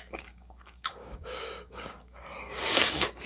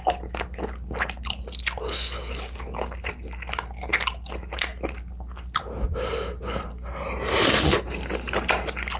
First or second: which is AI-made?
first